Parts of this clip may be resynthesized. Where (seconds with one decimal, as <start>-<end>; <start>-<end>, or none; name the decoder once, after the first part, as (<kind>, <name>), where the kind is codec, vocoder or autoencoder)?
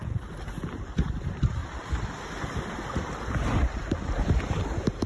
0.0-1.0 (vocoder, BigVGAN v2); 1.6-5.1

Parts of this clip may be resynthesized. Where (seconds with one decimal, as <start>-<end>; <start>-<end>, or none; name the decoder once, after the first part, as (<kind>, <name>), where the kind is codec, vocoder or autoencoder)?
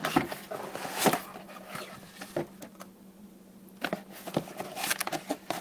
none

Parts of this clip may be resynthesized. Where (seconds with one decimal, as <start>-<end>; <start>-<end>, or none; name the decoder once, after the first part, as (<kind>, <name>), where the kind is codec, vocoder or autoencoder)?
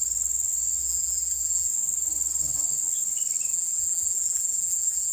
0.8-1.7 (vocoder, BigVGAN v2); 3.5-5.1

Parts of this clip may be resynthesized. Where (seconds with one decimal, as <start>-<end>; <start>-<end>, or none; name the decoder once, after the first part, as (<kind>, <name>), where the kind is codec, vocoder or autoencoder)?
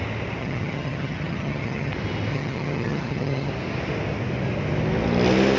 0.4-1.9 (vocoder, HiFi-GAN); 2.3-3.5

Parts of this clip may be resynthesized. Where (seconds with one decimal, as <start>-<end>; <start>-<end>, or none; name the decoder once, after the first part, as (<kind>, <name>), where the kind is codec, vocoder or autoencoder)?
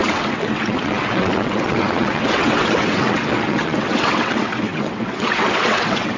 0.0-6.2 (vocoder, WaveNeXt)